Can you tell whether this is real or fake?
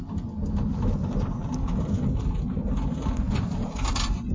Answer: real